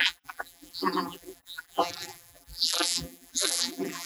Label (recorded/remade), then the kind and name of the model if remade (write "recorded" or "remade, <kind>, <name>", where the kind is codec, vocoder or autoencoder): remade, vocoder, BigVGAN v2